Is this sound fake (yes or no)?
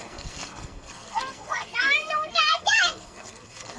yes